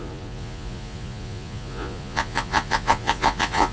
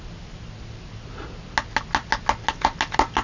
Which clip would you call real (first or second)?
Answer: second